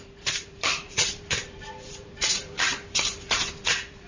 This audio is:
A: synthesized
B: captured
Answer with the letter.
A